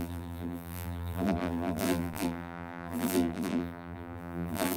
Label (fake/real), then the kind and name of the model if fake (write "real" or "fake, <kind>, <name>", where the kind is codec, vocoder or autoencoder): fake, vocoder, BigVGAN v2